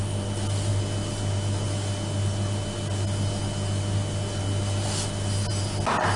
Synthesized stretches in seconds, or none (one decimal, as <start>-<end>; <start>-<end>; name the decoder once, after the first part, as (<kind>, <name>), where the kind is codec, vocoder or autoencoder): none